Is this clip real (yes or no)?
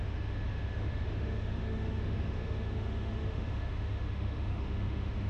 no